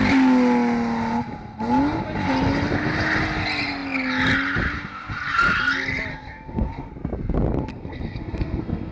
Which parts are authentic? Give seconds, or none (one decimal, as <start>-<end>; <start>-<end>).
0.0-6.1; 6.9-7.7